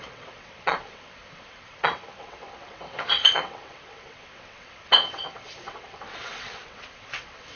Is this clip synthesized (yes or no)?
yes